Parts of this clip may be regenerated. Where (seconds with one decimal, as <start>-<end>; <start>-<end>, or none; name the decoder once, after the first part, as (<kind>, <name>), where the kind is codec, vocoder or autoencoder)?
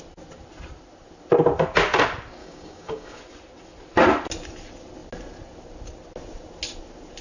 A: 2.4-3.2 (codec, DAC)